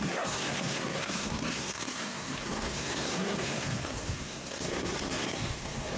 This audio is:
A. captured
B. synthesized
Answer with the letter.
B